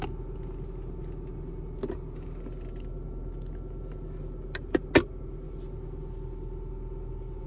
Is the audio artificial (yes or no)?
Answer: no